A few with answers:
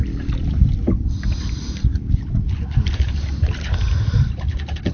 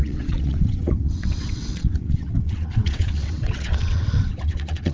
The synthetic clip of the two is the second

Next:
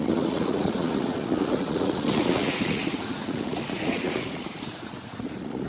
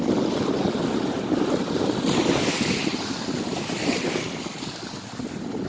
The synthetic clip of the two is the first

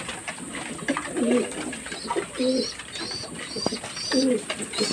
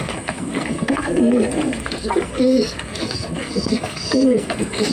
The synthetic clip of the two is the second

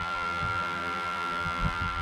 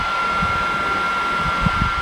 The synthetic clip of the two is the first